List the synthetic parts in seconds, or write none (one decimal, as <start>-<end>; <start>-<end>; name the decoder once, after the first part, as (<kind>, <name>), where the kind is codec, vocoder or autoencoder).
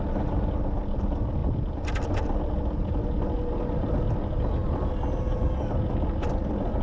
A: none